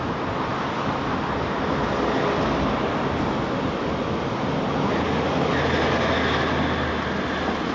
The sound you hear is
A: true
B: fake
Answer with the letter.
A